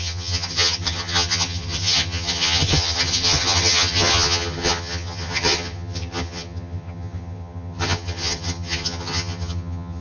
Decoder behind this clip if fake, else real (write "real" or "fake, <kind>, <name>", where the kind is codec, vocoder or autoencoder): fake, vocoder, HiFi-GAN